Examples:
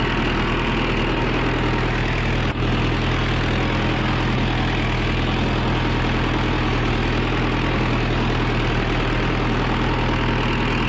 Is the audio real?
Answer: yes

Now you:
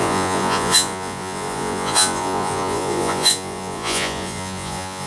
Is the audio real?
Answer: no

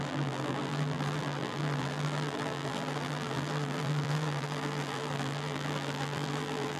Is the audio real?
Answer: no